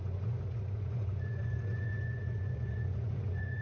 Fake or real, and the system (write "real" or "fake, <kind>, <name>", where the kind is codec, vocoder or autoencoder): fake, vocoder, Vocos